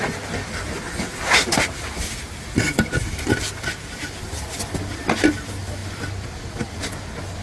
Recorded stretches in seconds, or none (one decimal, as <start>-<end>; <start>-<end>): 0.0-7.4